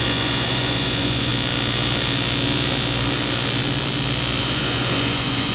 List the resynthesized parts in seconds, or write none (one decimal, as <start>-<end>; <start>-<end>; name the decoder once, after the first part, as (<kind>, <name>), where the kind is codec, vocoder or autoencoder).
0.0-1.3 (vocoder, Vocos); 4.4-5.5